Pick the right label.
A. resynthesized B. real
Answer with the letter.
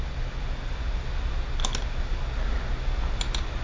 B